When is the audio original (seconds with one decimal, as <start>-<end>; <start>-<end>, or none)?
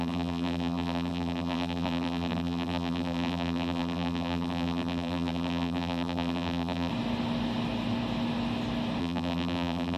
6.9-9.0